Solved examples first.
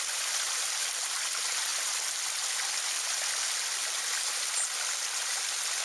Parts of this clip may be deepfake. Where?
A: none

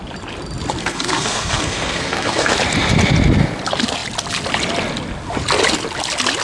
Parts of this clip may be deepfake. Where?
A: 0.8-2.5 (codec, SNAC)

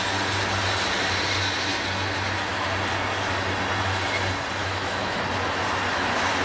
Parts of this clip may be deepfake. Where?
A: 4.6-5.2 (autoencoder, DAC-VAE)

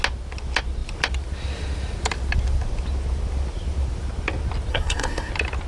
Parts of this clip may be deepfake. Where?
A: 4.7-5.3 (codec, SNAC)

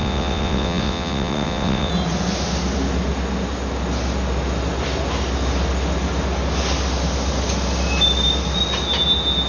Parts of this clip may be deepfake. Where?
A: 0.0-1.9 (vocoder, WaveNeXt)